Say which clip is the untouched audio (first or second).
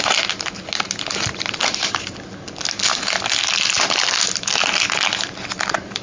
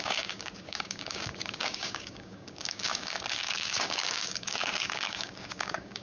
first